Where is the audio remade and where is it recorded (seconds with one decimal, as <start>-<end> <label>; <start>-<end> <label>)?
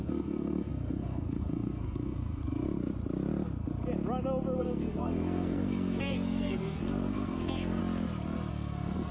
0.0-2.4 remade; 2.4-4.6 recorded; 4.6-7.8 remade; 7.8-8.5 recorded; 8.5-9.1 remade